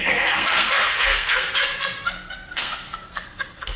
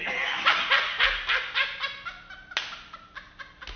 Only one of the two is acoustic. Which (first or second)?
second